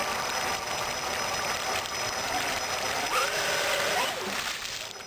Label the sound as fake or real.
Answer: real